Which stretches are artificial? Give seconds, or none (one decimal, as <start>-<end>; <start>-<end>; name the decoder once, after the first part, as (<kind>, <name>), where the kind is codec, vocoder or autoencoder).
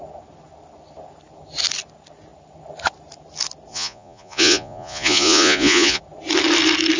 3.7-6.0 (vocoder, Vocos)